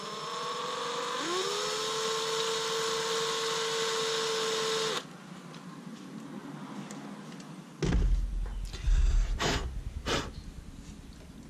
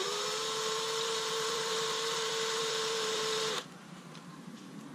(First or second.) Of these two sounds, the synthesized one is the second